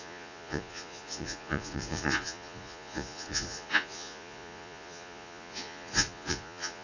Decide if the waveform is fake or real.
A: fake